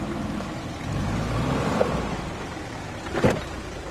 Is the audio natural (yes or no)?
no